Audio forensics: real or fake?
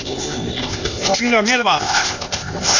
fake